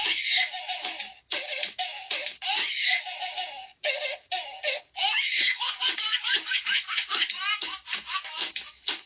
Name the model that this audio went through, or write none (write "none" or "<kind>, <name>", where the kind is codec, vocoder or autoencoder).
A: codec, DAC